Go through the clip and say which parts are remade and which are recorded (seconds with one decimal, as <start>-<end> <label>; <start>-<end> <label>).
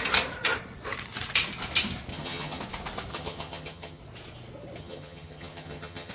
0.0-2.1 recorded; 2.1-2.6 remade; 2.6-3.1 recorded; 3.1-4.0 remade; 4.0-4.8 recorded; 4.8-6.1 remade